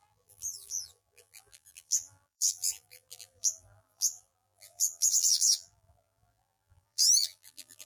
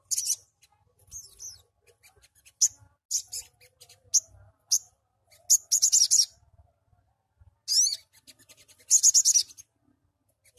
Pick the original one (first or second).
second